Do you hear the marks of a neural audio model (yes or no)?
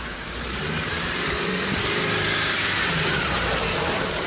yes